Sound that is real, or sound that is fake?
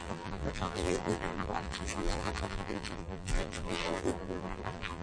fake